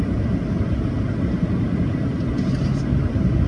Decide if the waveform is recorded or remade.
recorded